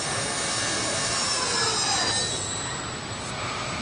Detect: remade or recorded recorded